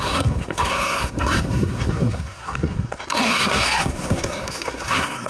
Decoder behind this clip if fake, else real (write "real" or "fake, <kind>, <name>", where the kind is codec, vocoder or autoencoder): fake, codec, SNAC